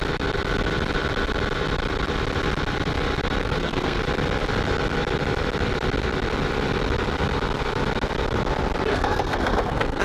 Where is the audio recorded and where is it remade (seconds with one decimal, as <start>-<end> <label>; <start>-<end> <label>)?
0.0-3.4 recorded; 3.4-4.0 remade; 4.0-8.9 recorded; 8.9-10.0 remade